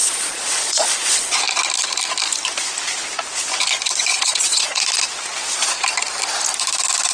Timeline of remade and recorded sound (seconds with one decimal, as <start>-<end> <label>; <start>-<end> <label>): 0.0-1.4 remade; 1.4-4.1 recorded; 4.1-4.8 remade; 4.8-7.1 recorded